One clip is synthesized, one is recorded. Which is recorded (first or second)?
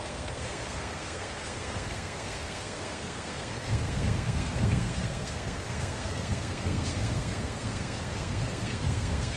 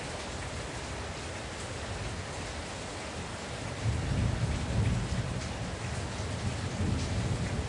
second